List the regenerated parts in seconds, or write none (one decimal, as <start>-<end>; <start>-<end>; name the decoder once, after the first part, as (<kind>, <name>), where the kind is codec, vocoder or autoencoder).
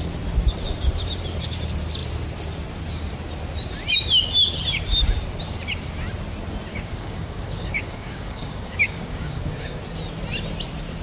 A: 6.7-9.8 (codec, DAC)